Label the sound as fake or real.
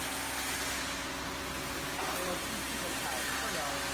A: real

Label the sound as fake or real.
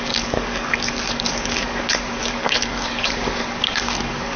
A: fake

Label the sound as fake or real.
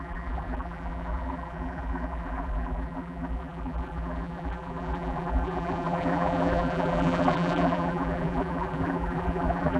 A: fake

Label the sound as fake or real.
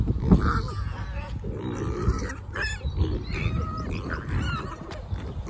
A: real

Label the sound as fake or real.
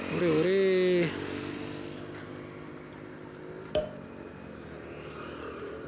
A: real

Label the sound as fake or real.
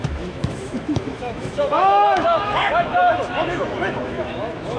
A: fake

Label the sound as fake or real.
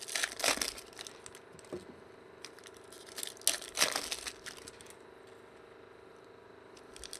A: real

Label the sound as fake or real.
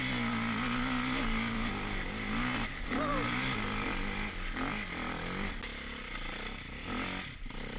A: real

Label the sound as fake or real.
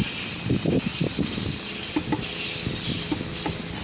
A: real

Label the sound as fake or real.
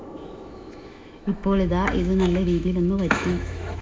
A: fake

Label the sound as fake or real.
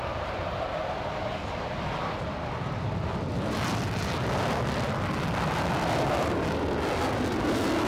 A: fake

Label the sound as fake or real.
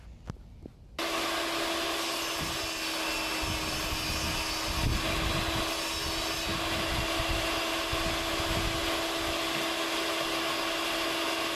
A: real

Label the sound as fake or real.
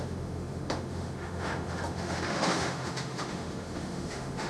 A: fake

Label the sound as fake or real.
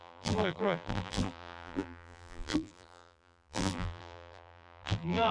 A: fake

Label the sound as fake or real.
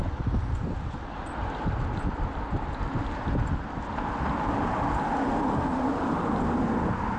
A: real